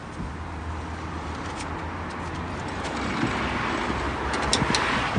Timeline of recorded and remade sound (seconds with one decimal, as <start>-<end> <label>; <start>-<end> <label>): 0.0-5.2 recorded